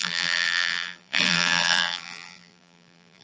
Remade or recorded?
remade